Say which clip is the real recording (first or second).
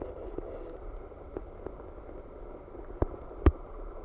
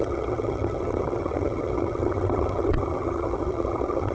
first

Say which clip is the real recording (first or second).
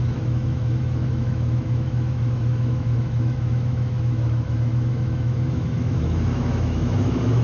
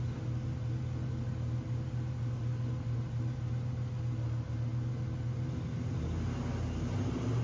second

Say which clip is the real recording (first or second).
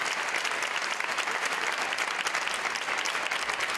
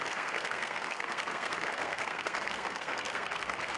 first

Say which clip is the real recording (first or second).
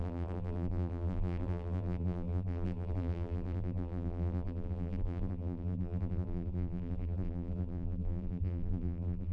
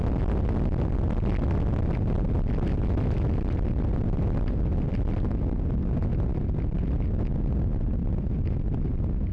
second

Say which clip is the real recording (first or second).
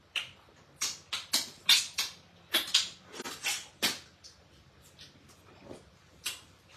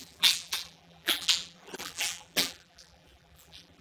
first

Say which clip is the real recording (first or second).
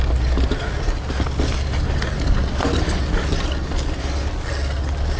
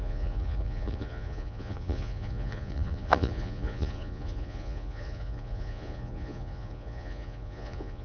first